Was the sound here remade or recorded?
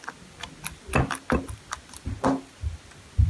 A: recorded